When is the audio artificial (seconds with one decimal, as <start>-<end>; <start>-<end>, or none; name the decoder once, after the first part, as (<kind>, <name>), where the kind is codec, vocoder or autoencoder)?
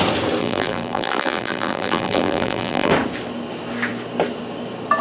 0.4-2.9 (vocoder, BigVGAN v2)